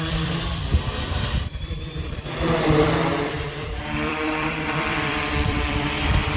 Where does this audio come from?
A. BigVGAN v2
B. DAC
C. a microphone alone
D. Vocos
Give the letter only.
A